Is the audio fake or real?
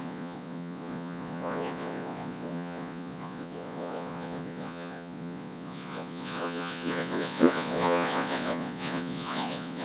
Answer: fake